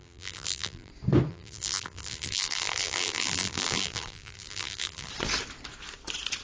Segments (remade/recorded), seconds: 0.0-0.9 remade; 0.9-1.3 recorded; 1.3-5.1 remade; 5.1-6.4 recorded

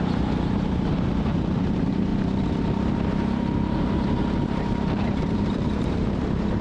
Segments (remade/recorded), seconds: 0.0-2.1 remade; 2.1-2.6 recorded; 2.6-6.6 remade

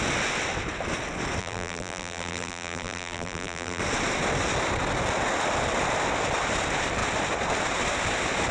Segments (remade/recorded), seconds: 0.0-1.4 recorded; 1.4-3.8 remade; 3.8-8.5 recorded

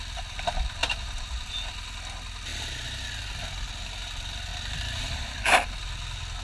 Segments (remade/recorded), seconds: 0.0-0.8 remade; 0.8-1.5 recorded; 1.5-2.5 remade; 2.5-3.9 recorded; 3.9-6.4 remade

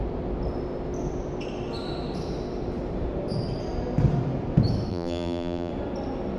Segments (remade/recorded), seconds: 0.0-4.9 recorded; 4.9-5.7 remade; 5.7-6.4 recorded

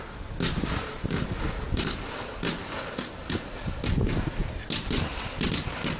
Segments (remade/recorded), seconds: 0.0-6.0 recorded

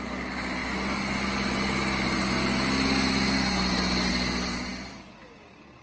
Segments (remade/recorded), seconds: 0.0-5.8 recorded

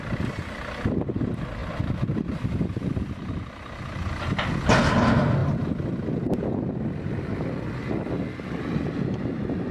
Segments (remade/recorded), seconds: 0.0-9.7 recorded